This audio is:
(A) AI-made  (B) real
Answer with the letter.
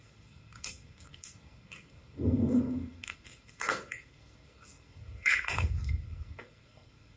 A